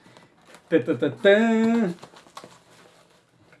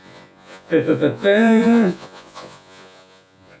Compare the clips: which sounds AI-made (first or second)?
second